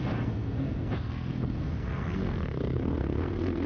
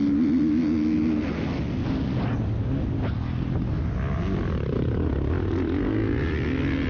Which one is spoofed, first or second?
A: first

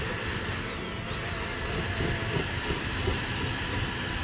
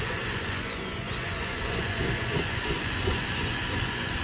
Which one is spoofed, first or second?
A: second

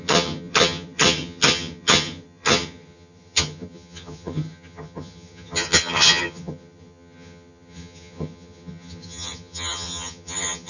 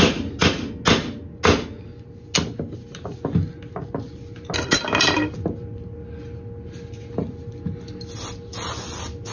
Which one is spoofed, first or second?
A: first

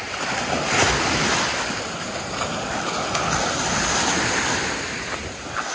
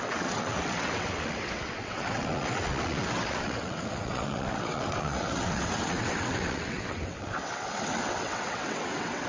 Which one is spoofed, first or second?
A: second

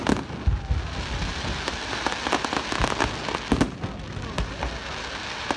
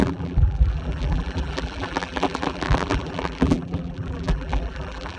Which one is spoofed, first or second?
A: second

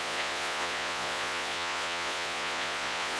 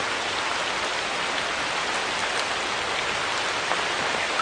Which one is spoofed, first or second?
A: first